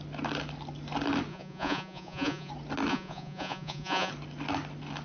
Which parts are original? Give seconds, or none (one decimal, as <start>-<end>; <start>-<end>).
0.0-1.3; 2.5-2.9; 4.1-5.0